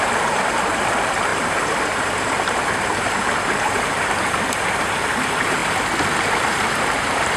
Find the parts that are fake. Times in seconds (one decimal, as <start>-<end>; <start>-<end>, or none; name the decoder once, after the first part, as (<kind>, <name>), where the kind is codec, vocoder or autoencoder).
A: 0.0-5.6 (vocoder, BigVGAN v2); 6.3-7.4